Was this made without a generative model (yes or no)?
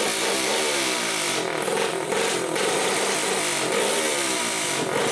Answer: yes